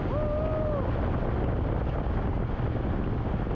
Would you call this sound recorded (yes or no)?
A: yes